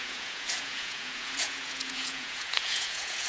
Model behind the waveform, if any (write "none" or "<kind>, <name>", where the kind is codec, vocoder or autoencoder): vocoder, Vocos